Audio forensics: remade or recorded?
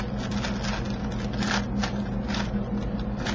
recorded